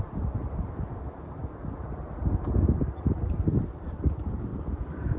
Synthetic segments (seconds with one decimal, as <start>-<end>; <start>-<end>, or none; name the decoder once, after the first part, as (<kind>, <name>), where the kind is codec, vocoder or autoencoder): 0.0-0.4 (vocoder, BigVGAN v2); 3.5-5.2